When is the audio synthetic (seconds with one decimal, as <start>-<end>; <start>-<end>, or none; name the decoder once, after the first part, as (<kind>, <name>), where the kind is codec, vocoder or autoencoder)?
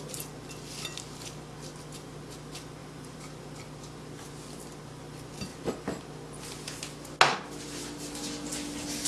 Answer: 2.8-4.3 (vocoder, BigVGAN v2); 5.5-6.1